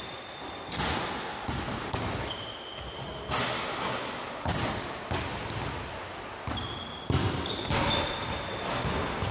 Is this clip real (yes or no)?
yes